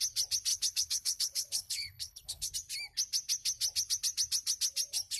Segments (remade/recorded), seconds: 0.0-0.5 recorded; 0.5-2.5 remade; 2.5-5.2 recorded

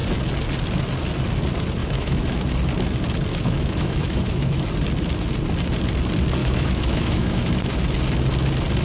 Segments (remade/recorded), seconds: 0.0-1.8 recorded; 1.8-2.4 remade; 2.4-3.3 recorded; 3.3-4.6 remade; 4.6-6.4 recorded; 6.4-7.5 remade; 7.5-8.8 recorded

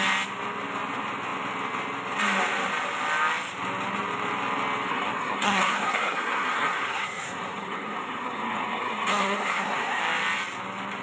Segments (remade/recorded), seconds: 0.0-4.9 recorded; 4.9-10.0 remade; 10.0-11.0 recorded

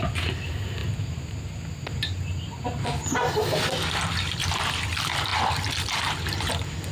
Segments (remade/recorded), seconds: 0.0-6.9 recorded

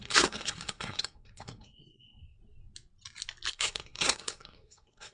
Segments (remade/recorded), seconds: 0.0-2.4 remade; 2.4-3.5 recorded; 3.5-5.1 remade

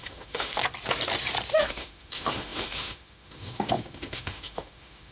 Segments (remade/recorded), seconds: 0.0-0.6 remade; 0.6-1.6 recorded; 1.6-5.1 remade

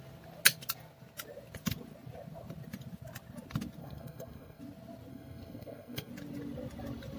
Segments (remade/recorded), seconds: 0.0-3.8 recorded; 3.8-4.6 remade; 4.6-5.1 recorded; 5.1-6.1 remade; 6.1-7.2 recorded